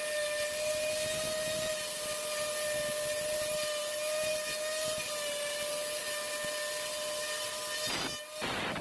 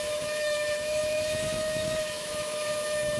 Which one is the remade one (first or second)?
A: second